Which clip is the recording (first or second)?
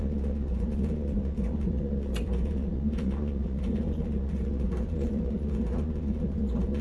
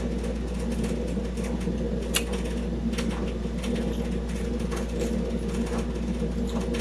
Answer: second